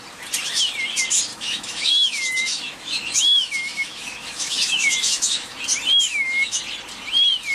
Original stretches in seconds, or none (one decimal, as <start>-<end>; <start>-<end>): 0.0-1.3; 5.6-6.1; 6.6-7.5